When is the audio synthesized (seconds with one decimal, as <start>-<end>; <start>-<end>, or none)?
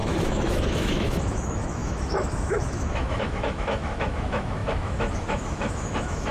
0.0-6.3